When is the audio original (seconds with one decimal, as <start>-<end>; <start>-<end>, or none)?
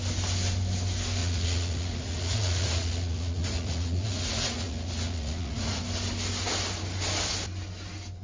0.0-1.2; 5.8-8.2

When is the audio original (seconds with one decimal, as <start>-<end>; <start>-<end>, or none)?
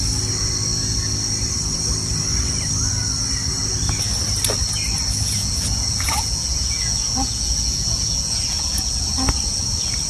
0.0-5.4; 9.1-10.1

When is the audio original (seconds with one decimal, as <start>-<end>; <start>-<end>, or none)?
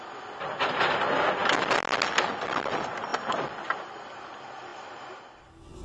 0.0-5.8